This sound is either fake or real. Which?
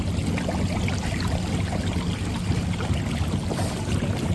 real